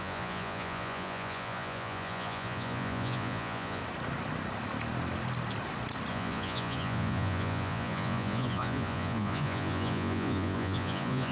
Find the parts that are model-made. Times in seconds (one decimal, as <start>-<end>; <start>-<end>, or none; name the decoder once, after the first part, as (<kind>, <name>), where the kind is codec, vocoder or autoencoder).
0.0-3.8 (vocoder, Vocos); 6.1-11.3